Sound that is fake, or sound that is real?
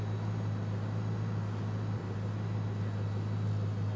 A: real